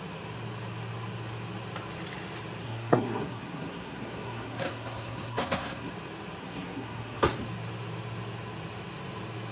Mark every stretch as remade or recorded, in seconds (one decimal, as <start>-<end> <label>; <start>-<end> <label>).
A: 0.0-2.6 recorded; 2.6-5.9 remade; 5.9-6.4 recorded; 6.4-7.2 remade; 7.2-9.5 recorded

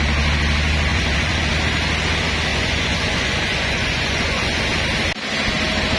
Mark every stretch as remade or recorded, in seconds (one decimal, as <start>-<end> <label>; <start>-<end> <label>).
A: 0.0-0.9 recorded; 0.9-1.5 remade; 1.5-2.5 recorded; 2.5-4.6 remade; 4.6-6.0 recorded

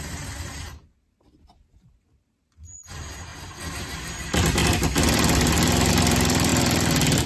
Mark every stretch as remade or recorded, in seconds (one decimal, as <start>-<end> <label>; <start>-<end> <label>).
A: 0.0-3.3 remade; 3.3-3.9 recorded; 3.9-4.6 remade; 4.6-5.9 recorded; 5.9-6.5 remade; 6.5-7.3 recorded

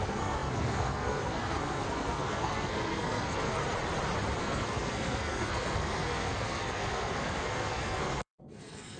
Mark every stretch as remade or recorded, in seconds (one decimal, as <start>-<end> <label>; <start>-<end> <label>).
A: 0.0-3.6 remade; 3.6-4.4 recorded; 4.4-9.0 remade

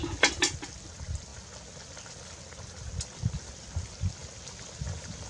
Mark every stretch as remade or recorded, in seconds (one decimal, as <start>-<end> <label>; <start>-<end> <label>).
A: 0.0-5.3 recorded